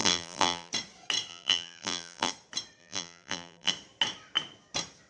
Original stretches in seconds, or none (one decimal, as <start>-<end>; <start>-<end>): 0.7-1.3; 2.3-2.8; 3.7-5.1